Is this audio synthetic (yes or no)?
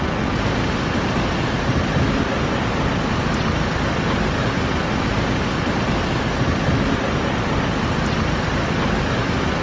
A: no